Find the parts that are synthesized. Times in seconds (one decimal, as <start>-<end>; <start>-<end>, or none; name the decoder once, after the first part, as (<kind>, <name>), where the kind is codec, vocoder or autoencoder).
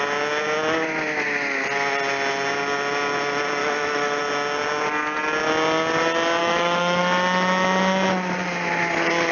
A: 3.6-4.2 (autoencoder, DAC-VAE); 6.4-7.0